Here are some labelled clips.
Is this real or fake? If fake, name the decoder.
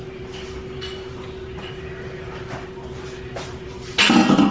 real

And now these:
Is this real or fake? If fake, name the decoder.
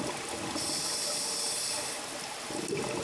real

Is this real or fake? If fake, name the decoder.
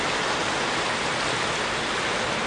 real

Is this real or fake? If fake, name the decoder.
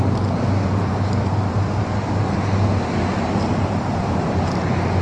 real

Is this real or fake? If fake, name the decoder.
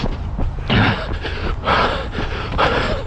real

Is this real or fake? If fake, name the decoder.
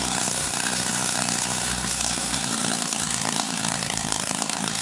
fake, codec, SNAC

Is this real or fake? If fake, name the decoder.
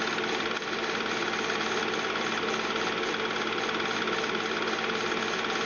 real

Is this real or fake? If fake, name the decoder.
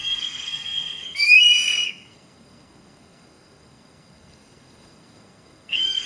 fake, codec, SNAC